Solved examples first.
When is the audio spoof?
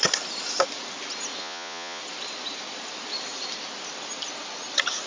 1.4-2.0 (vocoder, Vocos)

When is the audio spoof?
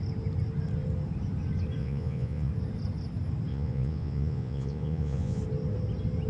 1.8-2.5 (vocoder, Vocos); 3.5-5.4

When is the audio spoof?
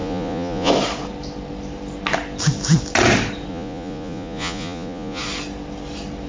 0.0-0.7 (vocoder, Vocos); 3.5-5.2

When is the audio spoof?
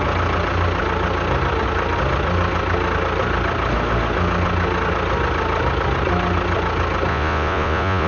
7.1-8.1 (vocoder, Vocos)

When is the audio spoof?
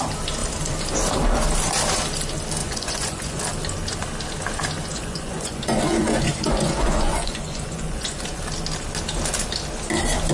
2.6-3.4 (vocoder, Vocos); 4.9-8.4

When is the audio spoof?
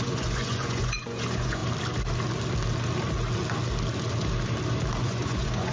0.0-1.6 (vocoder, Vocos); 5.0-5.7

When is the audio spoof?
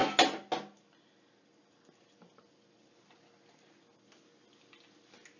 none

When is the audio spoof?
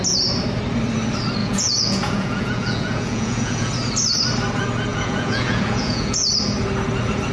1.4-3.7 (vocoder, Vocos); 4.9-6.3